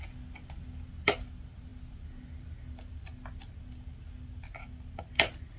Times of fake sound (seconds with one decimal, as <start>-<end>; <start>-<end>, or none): none